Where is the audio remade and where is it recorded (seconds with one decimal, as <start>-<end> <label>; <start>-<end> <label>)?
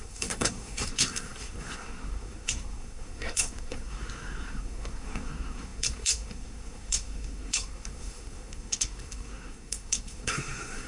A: 0.0-10.9 remade